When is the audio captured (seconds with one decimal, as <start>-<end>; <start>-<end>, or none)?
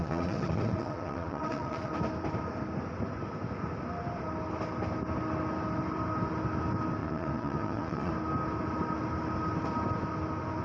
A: 1.9-7.0; 8.1-10.6